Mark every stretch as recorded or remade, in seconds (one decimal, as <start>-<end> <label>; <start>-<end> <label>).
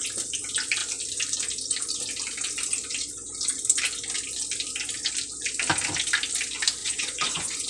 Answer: 0.0-6.8 recorded; 6.8-7.7 remade